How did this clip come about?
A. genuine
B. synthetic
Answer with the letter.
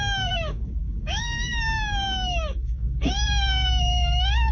B